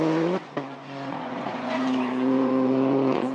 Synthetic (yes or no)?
yes